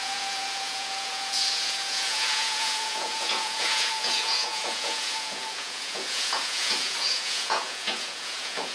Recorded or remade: remade